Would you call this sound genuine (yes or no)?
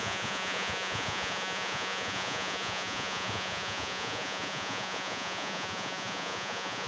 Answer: no